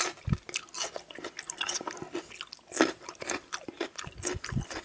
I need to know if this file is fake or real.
real